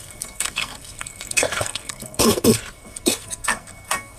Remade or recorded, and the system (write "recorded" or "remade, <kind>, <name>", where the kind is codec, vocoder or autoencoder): remade, codec, SNAC